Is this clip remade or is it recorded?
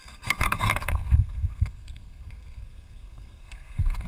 remade